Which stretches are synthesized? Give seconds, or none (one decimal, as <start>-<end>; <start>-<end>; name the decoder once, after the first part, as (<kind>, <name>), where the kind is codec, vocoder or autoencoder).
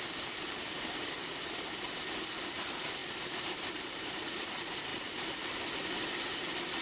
3.0-4.4 (vocoder, BigVGAN v2); 4.9-5.5